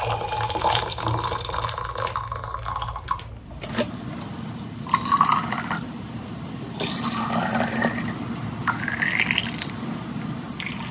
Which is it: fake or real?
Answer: real